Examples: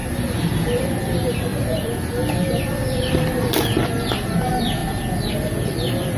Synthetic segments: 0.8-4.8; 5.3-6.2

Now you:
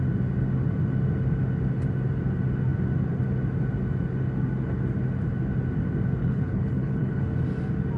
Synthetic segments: 6.2-7.2

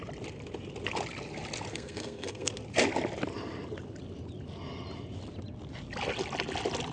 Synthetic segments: 1.7-2.5

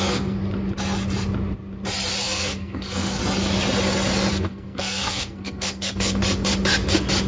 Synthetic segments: 0.0-0.4; 2.2-3.2; 4.3-6.2